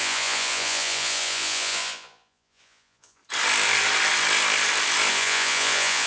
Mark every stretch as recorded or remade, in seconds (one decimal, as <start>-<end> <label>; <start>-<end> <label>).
0.0-3.2 remade; 3.2-5.1 recorded; 5.1-6.1 remade